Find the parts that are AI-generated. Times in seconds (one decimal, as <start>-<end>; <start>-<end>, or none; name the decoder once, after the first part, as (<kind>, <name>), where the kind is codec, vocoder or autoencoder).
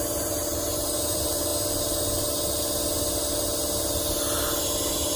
0.0-1.5 (vocoder, BigVGAN v2); 4.6-5.2